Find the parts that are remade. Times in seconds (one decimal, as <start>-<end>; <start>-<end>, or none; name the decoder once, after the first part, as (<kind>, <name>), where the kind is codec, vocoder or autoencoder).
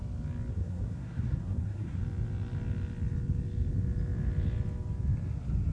0.5-2.0 (codec, SNAC)